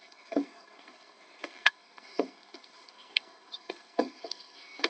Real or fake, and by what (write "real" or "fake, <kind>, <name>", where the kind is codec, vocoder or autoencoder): fake, codec, SNAC